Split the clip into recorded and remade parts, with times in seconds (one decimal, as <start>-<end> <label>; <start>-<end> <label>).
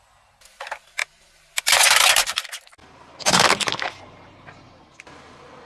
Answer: 0.0-5.7 recorded